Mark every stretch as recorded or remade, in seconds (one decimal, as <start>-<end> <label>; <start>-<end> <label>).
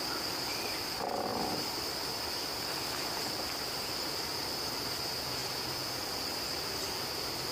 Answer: 0.0-7.5 recorded